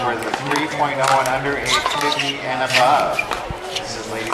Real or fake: real